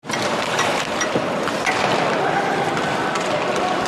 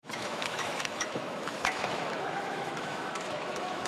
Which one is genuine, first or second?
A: first